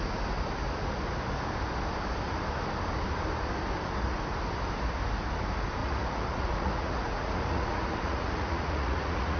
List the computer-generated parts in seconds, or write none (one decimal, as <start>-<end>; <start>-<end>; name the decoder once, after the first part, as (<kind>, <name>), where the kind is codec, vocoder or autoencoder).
5.8-9.4 (vocoder, Vocos)